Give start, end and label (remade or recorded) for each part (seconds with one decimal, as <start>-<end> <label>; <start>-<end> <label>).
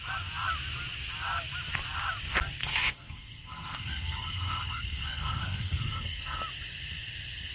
0.0-2.6 recorded; 2.6-6.4 remade; 6.4-7.5 recorded